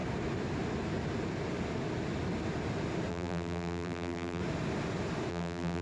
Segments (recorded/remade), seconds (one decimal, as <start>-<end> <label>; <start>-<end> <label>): 0.0-3.1 recorded; 3.1-4.4 remade; 4.4-5.3 recorded; 5.3-5.8 remade

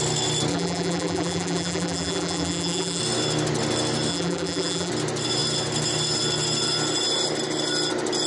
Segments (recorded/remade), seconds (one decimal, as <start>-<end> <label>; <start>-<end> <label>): 0.0-0.5 recorded; 0.5-3.0 remade; 3.0-4.1 recorded; 4.1-4.9 remade; 4.9-8.3 recorded

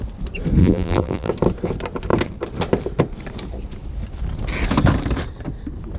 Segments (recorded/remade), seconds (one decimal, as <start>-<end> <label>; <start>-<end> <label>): 0.0-0.6 recorded; 0.6-1.3 remade; 1.3-6.0 recorded

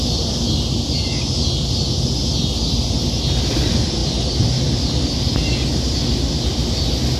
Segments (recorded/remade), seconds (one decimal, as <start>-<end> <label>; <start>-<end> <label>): 0.0-7.2 recorded

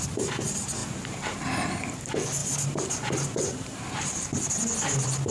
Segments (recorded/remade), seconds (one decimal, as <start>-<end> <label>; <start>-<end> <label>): 0.0-0.8 recorded; 0.8-1.4 remade; 1.4-2.4 recorded; 2.4-4.3 remade; 4.3-5.3 recorded

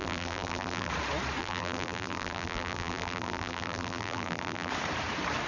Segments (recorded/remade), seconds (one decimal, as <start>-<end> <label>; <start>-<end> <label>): 0.0-0.9 remade; 0.9-1.4 recorded; 1.4-4.7 remade; 4.7-5.5 recorded